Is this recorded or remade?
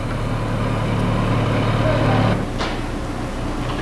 recorded